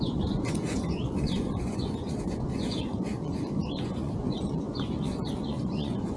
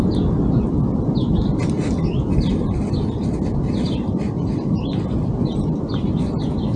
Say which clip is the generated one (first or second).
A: first